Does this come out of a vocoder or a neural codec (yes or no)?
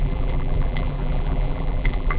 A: yes